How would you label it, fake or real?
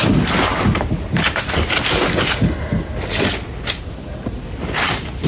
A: real